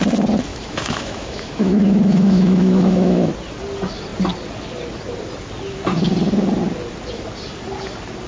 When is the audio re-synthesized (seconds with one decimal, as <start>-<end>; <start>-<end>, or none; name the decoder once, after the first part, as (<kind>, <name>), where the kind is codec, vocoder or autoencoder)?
0.5-3.3 (autoencoder, DAC-VAE)